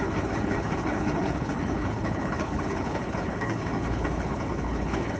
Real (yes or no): no